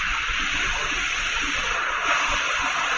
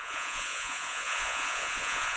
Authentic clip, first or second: first